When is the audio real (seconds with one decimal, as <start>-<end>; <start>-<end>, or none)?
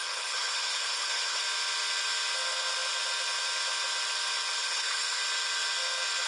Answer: 1.4-4.6; 5.2-6.3